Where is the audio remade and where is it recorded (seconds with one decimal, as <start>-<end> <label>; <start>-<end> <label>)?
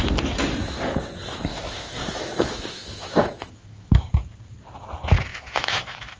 0.0-1.5 recorded; 1.5-4.1 remade; 4.1-5.3 recorded; 5.3-6.2 remade